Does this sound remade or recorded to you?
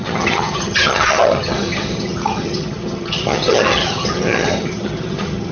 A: remade